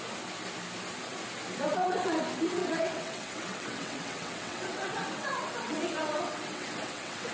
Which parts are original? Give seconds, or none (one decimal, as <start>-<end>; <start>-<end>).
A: 0.0-1.7; 2.2-2.6